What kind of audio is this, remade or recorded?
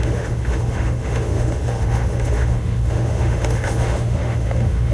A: remade